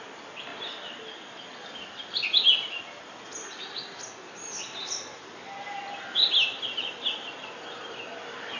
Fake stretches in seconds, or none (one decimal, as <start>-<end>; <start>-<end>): none